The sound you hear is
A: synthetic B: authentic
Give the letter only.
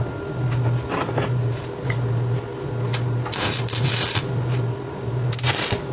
B